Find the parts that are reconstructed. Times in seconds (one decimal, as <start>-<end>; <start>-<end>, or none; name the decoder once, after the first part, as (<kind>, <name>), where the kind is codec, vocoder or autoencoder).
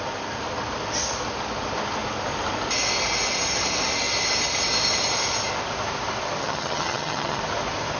6.4-7.4 (vocoder, HiFi-GAN)